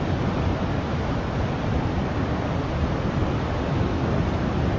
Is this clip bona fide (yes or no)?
yes